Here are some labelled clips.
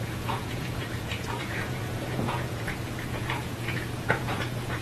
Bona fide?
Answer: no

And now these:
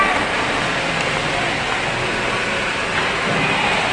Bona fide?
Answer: yes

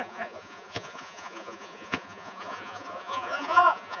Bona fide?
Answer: no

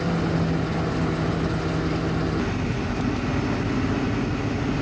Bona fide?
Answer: yes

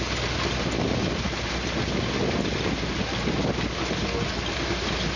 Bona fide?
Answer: yes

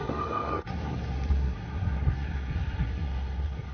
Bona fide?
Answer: no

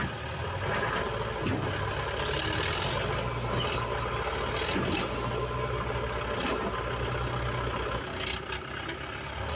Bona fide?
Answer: yes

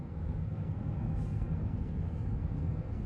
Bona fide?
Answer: no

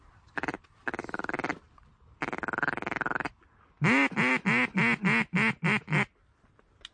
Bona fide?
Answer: yes